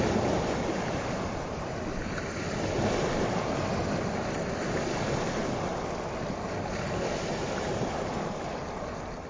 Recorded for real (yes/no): yes